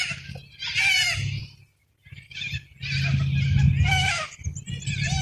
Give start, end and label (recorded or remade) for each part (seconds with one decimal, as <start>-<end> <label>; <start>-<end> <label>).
0.0-1.4 recorded; 1.4-2.8 remade; 2.8-5.2 recorded